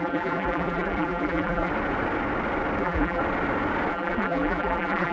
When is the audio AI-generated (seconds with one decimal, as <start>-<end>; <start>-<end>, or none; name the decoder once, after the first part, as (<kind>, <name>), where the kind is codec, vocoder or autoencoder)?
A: 0.0-1.7 (vocoder, BigVGAN v2); 2.8-3.2; 3.9-5.1